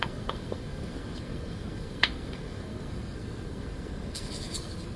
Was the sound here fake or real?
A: fake